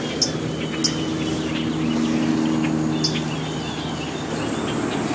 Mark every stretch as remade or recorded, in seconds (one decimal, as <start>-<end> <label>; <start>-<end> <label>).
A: 0.0-5.1 recorded